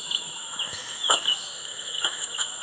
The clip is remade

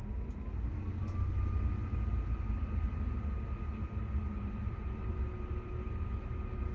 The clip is recorded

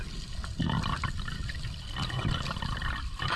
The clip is recorded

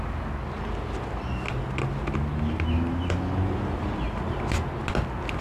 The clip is recorded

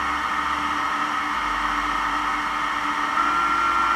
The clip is recorded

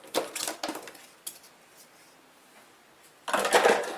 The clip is recorded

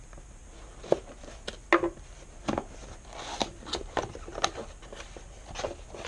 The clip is recorded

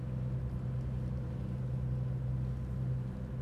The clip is recorded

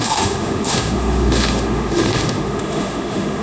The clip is remade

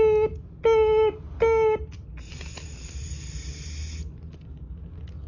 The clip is recorded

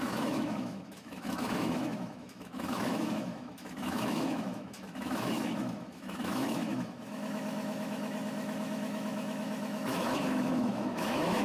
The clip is remade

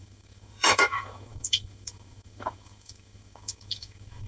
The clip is remade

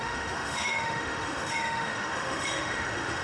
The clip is remade